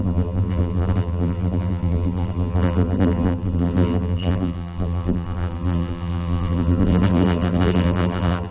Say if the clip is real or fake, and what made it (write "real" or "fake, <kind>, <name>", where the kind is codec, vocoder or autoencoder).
fake, vocoder, BigVGAN v2